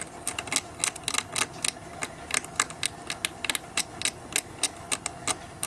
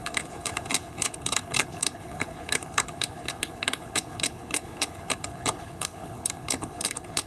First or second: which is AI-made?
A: second